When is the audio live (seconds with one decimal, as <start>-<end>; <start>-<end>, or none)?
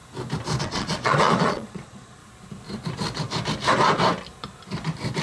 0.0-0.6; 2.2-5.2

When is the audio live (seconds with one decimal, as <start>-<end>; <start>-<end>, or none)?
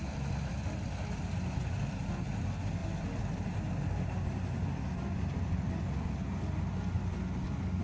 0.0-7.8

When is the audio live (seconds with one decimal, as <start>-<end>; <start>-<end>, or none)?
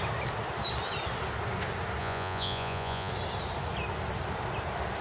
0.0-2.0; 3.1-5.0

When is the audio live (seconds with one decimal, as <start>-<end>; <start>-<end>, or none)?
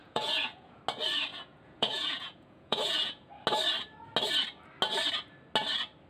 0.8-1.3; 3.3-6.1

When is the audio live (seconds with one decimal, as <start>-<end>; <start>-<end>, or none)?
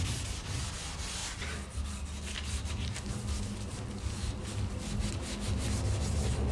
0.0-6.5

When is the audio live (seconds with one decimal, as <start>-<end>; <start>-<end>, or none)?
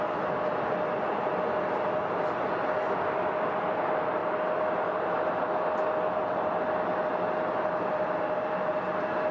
0.0-9.3